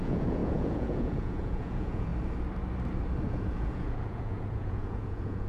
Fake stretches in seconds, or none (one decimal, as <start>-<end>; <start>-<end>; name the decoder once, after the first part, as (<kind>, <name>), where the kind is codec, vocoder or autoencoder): 0.0-2.1 (vocoder, Vocos); 3.3-5.5